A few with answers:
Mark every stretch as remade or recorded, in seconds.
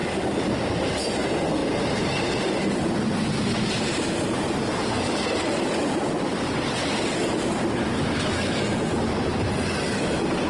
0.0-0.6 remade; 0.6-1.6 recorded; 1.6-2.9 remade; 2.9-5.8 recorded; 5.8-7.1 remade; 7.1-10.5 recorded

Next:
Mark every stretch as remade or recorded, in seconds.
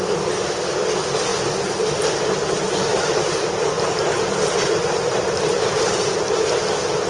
0.0-1.3 recorded; 1.3-2.1 remade; 2.1-2.9 recorded; 2.9-6.6 remade; 6.6-7.1 recorded